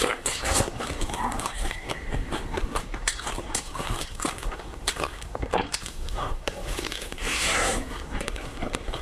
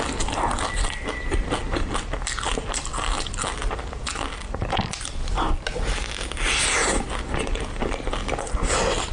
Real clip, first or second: second